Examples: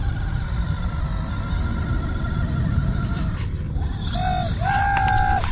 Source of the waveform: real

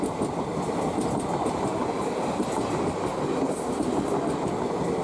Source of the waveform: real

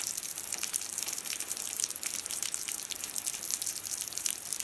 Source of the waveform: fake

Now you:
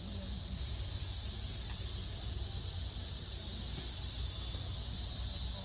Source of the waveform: real